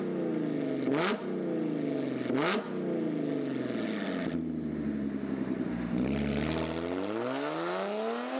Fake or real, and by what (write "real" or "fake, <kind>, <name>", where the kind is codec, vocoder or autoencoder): real